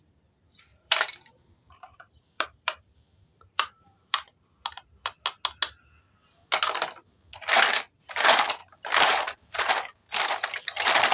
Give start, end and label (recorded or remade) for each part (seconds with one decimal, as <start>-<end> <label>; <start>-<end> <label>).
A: 0.0-0.7 recorded; 0.7-4.4 remade; 4.4-8.6 recorded; 8.6-9.7 remade; 9.7-11.1 recorded